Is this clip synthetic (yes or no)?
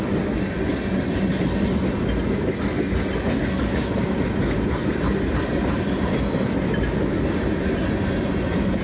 no